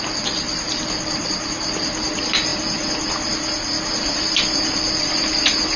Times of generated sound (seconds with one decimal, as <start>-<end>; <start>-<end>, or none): none